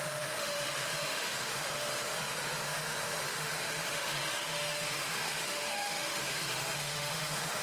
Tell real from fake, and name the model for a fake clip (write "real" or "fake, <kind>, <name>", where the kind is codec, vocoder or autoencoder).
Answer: fake, autoencoder, DAC-VAE